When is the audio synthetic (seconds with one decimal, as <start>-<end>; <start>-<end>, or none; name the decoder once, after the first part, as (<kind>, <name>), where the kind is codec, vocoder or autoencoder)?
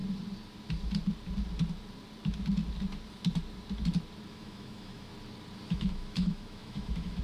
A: 4.3-5.1 (autoencoder, DAC-VAE); 5.7-7.2